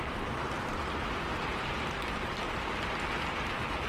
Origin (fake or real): fake